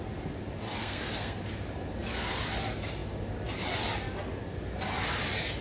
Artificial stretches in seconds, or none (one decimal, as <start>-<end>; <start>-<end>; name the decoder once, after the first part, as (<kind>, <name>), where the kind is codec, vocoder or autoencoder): 0.8-1.4 (codec, SNAC)

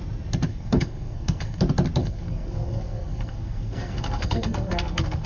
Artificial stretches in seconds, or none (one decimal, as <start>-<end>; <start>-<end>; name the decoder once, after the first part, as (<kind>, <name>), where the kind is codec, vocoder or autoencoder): 0.5-1.6 (codec, SNAC); 2.0-5.3

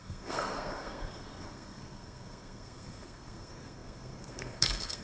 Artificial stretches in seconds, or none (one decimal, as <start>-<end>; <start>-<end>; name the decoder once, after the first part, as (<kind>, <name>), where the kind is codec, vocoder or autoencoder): 0.0-5.0 (codec, SNAC)

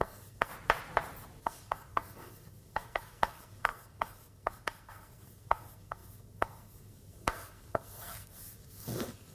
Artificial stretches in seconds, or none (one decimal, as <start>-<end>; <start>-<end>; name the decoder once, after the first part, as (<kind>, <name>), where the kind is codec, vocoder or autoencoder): 0.0-0.5 (codec, SNAC); 1.4-9.3